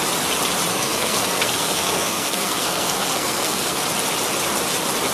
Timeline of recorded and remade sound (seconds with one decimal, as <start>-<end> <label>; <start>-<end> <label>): 0.0-0.7 recorded; 0.7-3.8 remade; 3.8-5.1 recorded